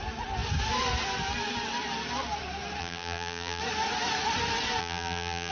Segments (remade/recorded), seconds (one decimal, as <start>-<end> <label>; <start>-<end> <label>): 0.0-2.8 recorded; 2.8-3.6 remade; 3.6-4.8 recorded; 4.8-5.5 remade